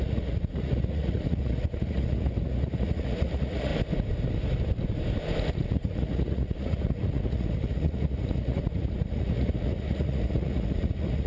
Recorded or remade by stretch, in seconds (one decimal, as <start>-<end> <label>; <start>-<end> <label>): 0.0-3.7 remade; 3.7-5.5 recorded; 5.5-11.3 remade